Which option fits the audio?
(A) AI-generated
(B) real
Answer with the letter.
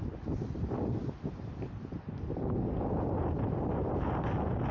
B